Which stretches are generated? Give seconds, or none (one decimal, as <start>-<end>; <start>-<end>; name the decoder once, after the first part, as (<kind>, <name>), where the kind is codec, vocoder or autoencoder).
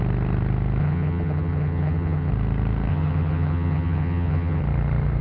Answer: 0.8-2.3 (vocoder, HiFi-GAN); 2.9-4.6